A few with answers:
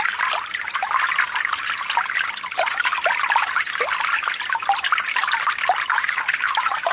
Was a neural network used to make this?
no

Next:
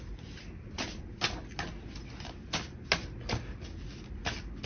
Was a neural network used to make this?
no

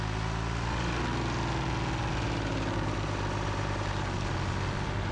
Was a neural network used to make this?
no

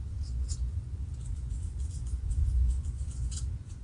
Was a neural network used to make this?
yes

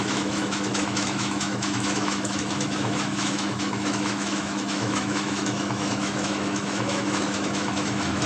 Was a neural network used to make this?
yes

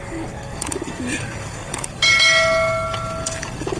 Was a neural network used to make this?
yes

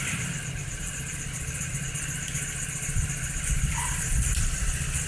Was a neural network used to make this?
yes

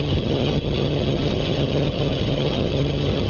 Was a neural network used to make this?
yes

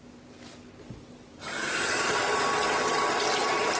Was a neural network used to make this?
no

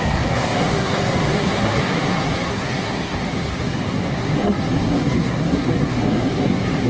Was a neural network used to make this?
yes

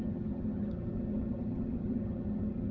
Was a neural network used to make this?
yes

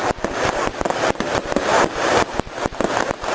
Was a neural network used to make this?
no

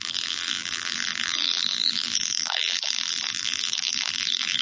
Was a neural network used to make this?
yes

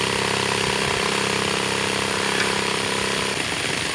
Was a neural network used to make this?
no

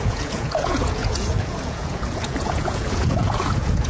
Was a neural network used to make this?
yes